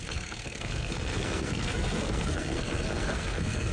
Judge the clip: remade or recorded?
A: remade